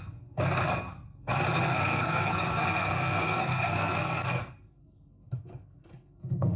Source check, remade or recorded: remade